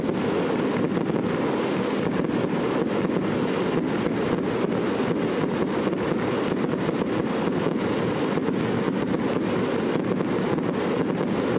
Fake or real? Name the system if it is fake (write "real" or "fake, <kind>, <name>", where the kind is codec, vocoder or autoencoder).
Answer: real